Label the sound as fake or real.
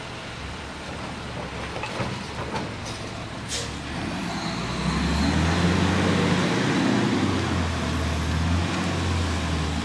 real